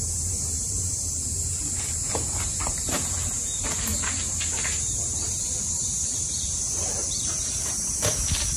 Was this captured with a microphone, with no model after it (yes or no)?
no